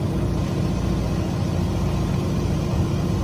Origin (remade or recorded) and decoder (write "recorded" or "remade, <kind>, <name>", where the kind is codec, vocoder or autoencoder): recorded